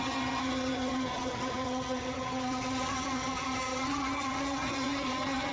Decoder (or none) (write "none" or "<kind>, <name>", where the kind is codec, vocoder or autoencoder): vocoder, HiFi-GAN